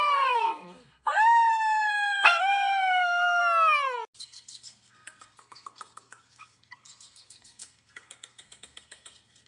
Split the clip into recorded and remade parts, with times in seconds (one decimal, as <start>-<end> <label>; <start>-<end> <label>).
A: 0.0-3.4 remade; 3.4-4.2 recorded; 4.2-9.5 remade